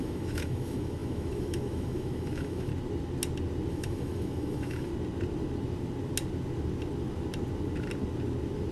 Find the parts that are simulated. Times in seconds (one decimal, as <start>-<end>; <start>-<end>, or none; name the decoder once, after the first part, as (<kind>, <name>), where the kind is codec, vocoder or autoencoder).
0.0-2.7 (autoencoder, DAC-VAE); 3.7-4.9

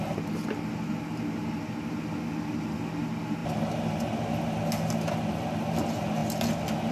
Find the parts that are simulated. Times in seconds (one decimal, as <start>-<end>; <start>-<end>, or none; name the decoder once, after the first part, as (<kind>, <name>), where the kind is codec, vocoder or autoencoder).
none